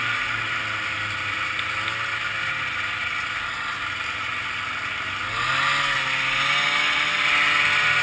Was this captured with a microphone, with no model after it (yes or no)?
yes